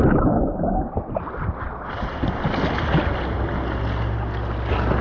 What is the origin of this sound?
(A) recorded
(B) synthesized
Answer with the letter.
A